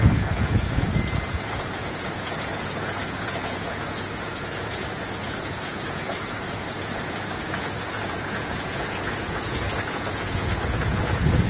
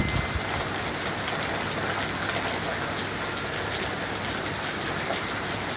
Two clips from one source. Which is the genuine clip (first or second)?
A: second